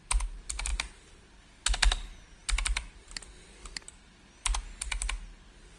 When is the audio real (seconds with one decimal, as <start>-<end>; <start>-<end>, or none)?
0.0-5.8